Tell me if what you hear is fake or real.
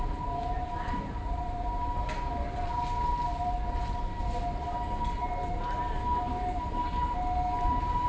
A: real